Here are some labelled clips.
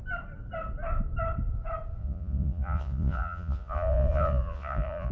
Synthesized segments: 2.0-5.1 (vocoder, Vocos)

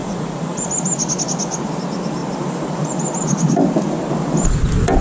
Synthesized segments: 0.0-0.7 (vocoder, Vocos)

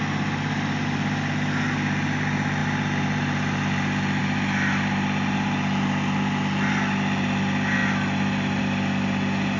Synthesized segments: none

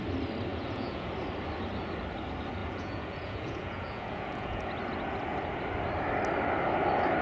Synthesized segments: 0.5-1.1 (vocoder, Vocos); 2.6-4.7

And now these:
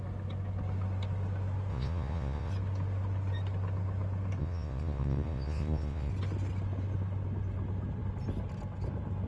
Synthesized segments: 1.7-2.5 (vocoder, Vocos); 4.4-6.1